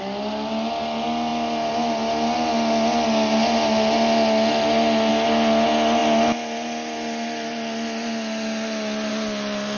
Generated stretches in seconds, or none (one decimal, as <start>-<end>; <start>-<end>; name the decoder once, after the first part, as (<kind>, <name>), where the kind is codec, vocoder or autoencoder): none